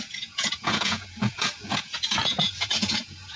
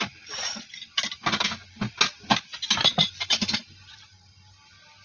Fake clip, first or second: first